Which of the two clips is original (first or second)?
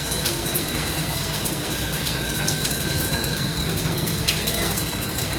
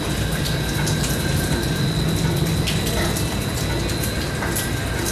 second